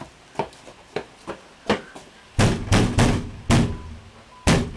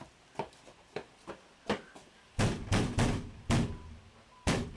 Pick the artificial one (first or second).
second